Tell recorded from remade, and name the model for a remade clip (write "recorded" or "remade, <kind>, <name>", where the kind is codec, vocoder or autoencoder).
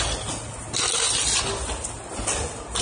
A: recorded